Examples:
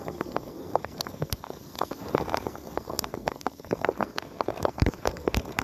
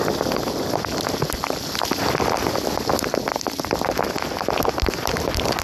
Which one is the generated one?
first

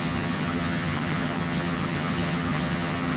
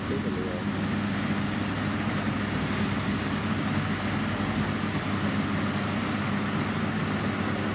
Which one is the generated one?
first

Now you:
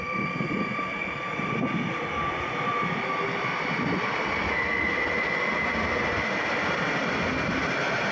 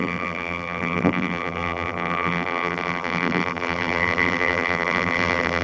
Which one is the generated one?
second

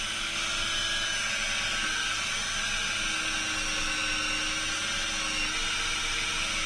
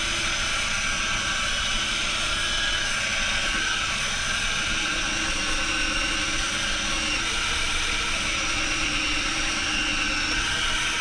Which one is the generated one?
second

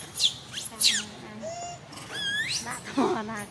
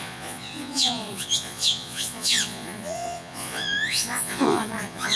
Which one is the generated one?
second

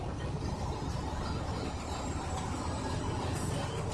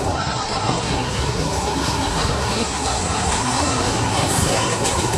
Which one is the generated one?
second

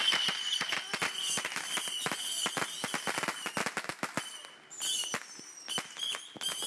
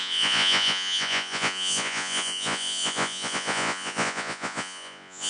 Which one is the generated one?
second